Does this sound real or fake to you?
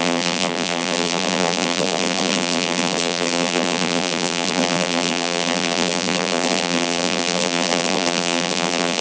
fake